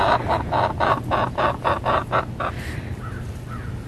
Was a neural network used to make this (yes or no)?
no